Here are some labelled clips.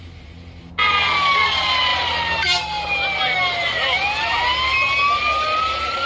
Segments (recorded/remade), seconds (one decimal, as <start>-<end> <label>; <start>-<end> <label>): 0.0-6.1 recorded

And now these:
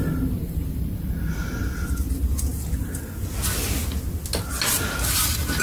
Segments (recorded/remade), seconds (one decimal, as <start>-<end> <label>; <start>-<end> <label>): 0.0-0.4 recorded; 0.4-1.2 remade; 1.2-5.6 recorded

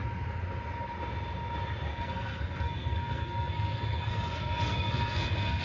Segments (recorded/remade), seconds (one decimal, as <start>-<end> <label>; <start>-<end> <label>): 0.0-1.9 recorded; 1.9-5.6 remade